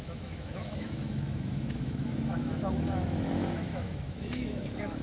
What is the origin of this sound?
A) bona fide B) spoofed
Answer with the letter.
B